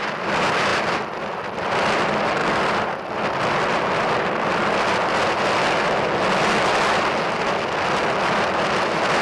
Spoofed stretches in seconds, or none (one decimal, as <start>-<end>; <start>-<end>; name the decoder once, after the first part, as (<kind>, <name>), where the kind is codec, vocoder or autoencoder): none